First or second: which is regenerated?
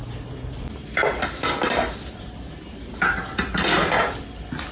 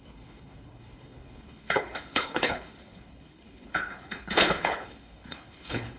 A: second